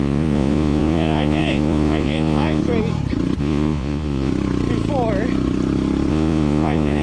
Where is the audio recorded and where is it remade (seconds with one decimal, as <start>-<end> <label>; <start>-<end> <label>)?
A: 0.0-2.6 remade; 2.6-3.4 recorded; 3.4-4.3 remade; 4.3-6.1 recorded; 6.1-7.0 remade